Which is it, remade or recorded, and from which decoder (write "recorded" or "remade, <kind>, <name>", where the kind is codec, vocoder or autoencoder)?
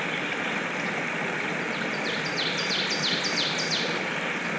recorded